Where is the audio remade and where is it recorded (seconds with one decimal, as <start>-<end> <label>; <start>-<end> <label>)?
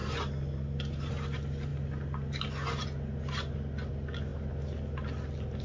0.0-5.6 recorded